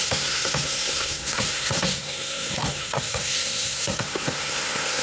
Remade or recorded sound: remade